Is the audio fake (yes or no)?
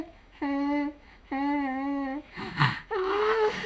yes